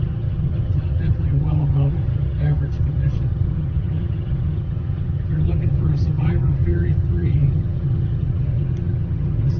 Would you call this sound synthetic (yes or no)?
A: yes